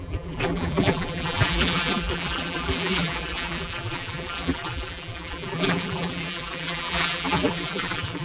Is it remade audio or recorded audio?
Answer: remade